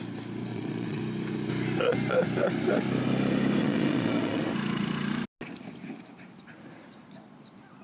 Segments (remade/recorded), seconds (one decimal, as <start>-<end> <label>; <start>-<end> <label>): 0.0-0.5 recorded; 0.5-1.0 remade; 1.0-3.6 recorded; 3.6-4.5 remade; 4.5-7.8 recorded